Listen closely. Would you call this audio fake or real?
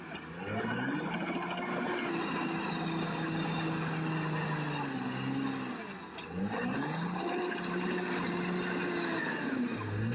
real